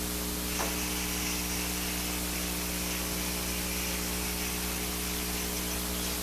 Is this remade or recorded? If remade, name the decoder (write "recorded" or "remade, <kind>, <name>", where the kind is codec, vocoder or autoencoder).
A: recorded